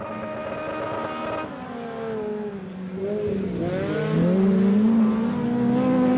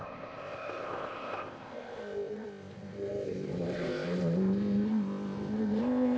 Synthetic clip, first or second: second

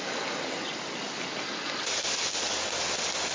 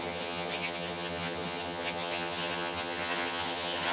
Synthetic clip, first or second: second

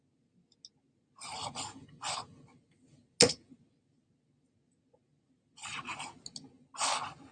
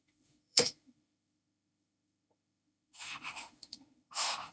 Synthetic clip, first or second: second